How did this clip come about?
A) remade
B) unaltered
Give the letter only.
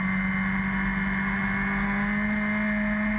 B